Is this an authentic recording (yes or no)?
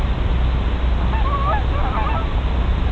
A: yes